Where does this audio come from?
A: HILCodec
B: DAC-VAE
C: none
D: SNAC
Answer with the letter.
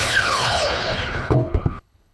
A